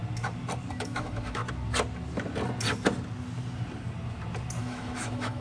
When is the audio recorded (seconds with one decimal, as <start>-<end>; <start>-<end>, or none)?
0.0-0.7; 1.4-4.6